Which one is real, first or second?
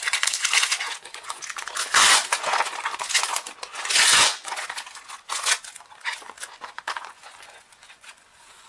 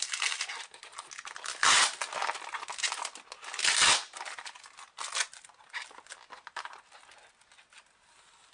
second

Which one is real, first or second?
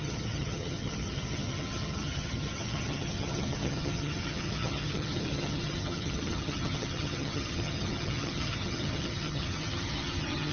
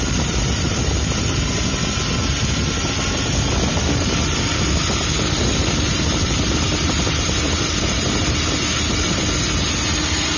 second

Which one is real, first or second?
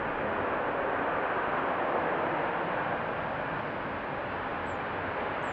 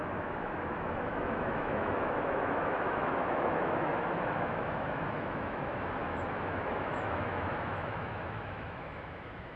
first